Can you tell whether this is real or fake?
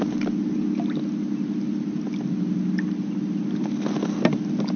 real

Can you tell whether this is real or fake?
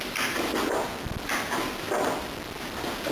real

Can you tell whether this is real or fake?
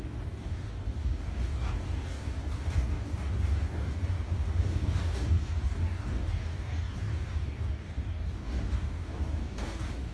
fake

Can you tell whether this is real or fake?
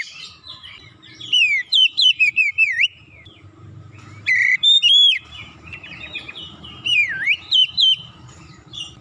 fake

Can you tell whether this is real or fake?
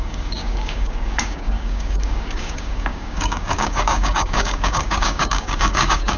fake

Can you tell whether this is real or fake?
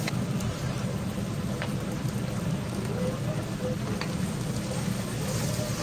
real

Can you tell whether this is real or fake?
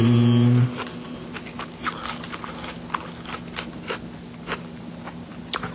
real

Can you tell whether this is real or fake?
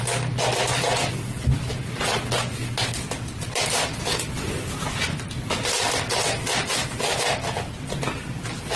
real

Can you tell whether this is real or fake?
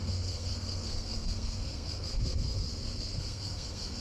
fake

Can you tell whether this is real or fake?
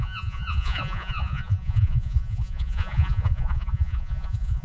fake